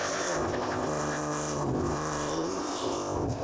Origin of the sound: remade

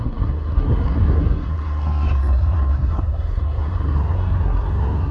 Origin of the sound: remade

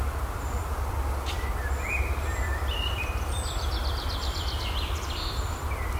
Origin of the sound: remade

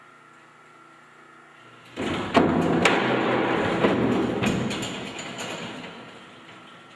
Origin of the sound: recorded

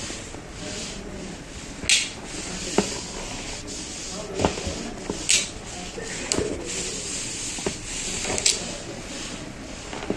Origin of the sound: recorded